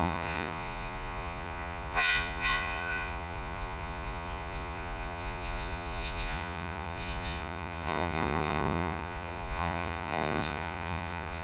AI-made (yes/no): yes